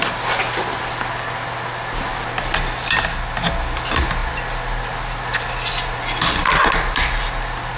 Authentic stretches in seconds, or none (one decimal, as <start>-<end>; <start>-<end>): 0.0-7.8